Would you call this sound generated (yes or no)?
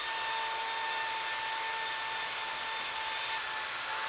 no